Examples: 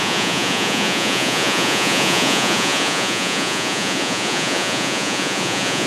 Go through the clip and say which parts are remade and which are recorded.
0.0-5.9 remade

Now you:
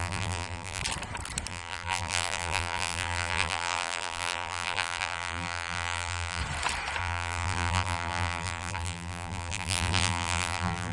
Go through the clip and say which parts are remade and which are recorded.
0.0-0.8 remade; 0.8-1.5 recorded; 1.5-6.4 remade; 6.4-7.0 recorded; 7.0-10.9 remade